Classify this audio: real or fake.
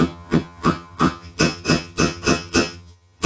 fake